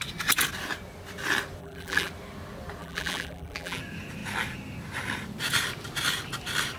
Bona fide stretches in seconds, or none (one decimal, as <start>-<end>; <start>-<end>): 0.0-1.6; 2.1-2.8; 3.8-6.8